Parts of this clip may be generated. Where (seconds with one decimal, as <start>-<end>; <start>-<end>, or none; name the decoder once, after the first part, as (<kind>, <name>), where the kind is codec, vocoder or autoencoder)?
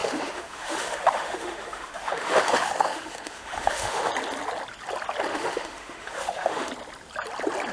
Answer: 0.0-4.1 (autoencoder, DAC-VAE); 5.3-6.7